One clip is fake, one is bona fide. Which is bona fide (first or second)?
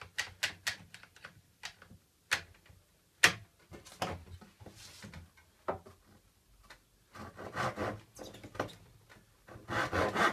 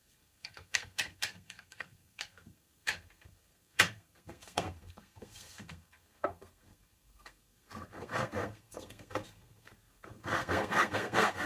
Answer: first